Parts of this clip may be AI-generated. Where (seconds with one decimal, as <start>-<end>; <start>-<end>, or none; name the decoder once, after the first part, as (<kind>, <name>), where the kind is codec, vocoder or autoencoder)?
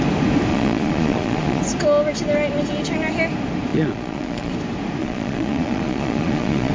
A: 0.5-1.6 (vocoder, Vocos); 3.7-4.5; 5.0-6.7